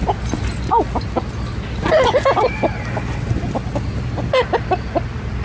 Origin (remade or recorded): recorded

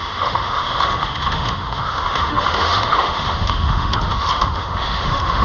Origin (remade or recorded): remade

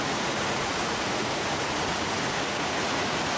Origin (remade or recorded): remade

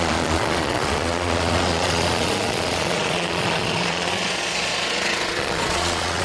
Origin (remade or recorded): remade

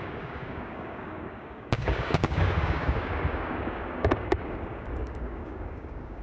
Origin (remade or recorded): remade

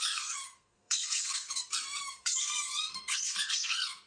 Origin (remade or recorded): remade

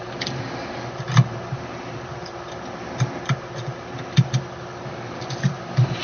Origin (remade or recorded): remade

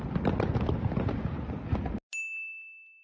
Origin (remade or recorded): recorded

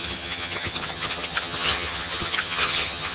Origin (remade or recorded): remade